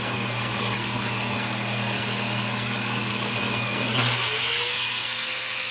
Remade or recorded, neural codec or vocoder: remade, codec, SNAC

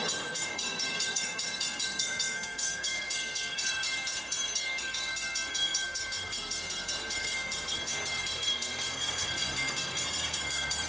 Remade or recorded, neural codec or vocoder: remade, codec, SNAC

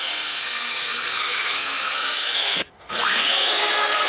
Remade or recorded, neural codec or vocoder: remade, codec, SNAC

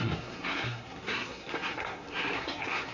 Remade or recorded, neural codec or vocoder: remade, codec, SNAC